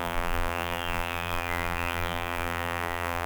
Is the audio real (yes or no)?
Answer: no